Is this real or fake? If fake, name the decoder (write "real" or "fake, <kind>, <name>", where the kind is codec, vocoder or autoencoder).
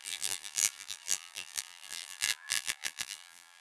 fake, vocoder, BigVGAN v2